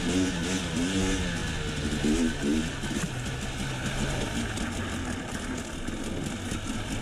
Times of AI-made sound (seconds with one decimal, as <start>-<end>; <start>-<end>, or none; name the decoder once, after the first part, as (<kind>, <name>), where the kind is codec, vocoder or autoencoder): none